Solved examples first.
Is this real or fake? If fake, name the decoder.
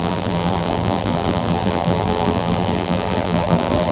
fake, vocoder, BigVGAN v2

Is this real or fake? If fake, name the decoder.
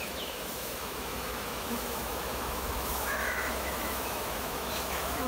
fake, autoencoder, DAC-VAE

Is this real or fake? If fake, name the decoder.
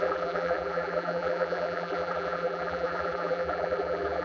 fake, vocoder, BigVGAN v2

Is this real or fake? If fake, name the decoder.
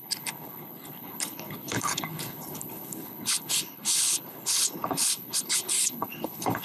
fake, codec, HILCodec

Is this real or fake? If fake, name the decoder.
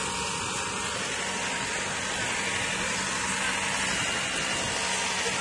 real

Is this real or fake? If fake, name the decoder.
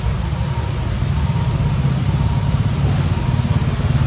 real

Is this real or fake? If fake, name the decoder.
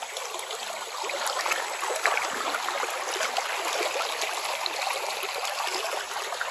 real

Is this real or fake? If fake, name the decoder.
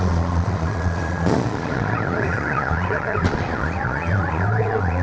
fake, vocoder, Vocos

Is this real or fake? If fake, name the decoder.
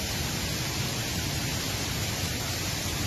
real